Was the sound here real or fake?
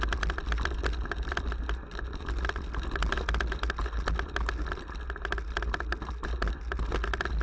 real